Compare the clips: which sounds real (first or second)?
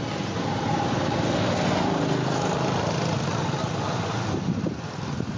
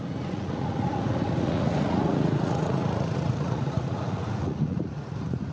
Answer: first